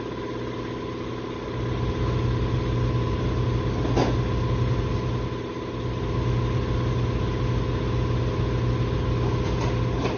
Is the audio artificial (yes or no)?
no